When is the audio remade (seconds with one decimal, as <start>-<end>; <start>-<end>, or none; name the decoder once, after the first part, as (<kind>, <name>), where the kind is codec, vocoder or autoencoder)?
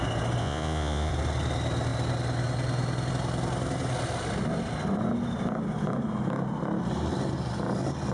0.4-1.1 (vocoder, Vocos)